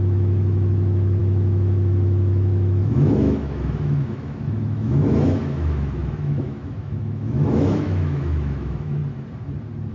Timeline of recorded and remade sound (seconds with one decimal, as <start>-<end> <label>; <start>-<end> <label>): 0.0-9.0 remade; 9.0-9.9 recorded